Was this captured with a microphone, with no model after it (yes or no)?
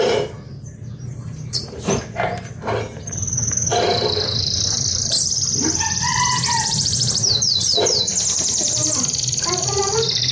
no